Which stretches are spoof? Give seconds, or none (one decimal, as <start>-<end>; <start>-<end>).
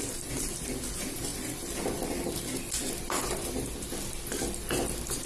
none